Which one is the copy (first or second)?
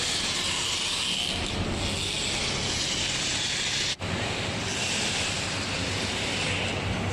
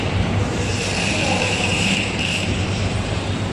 second